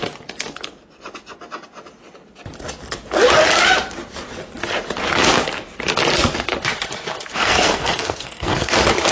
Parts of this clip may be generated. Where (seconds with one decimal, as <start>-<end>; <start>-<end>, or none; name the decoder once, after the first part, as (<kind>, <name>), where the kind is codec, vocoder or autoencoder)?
7.3-8.7 (codec, SNAC)